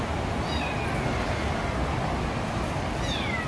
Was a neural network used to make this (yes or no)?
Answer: no